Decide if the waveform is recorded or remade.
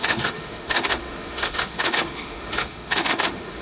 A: remade